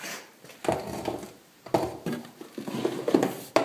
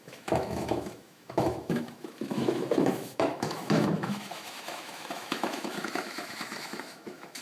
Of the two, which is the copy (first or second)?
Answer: second